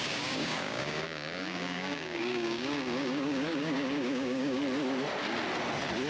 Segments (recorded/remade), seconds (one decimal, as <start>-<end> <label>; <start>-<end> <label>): 0.0-4.6 remade; 4.6-6.1 recorded